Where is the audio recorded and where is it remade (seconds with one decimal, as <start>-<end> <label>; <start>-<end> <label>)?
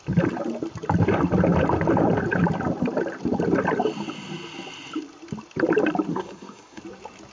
0.0-6.1 recorded; 6.1-6.8 remade; 6.8-7.3 recorded